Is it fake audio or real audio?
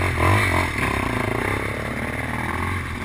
real